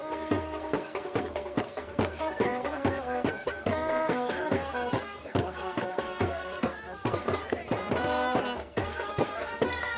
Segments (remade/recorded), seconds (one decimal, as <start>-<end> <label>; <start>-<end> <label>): 0.0-7.6 remade; 7.6-8.4 recorded; 8.4-10.0 remade